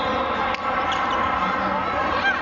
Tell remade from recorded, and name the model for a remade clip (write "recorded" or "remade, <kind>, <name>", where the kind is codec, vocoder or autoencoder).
recorded